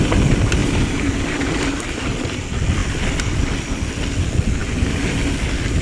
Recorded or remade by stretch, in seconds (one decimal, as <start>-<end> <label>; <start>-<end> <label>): 0.0-5.8 recorded